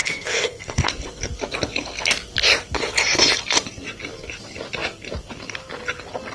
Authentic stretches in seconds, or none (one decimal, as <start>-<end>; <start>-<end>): 0.9-6.3